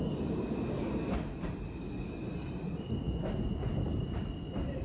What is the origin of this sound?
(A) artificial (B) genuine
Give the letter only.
B